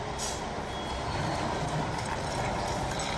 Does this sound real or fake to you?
real